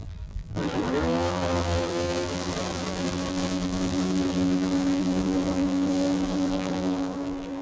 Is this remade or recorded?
remade